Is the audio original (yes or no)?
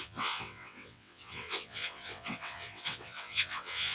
no